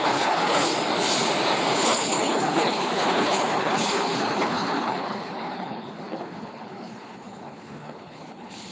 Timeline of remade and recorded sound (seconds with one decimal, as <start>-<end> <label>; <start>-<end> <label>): 0.0-0.7 remade; 0.7-1.7 recorded; 1.7-8.7 remade